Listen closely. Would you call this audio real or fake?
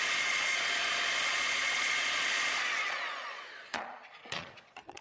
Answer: fake